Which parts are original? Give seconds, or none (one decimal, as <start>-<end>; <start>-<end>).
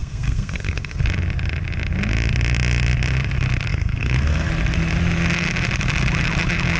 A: 1.0-3.7; 4.5-6.8